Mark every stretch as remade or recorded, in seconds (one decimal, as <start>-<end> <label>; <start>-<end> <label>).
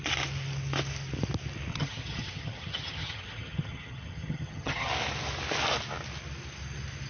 0.0-1.7 recorded; 1.7-4.9 remade; 4.9-7.1 recorded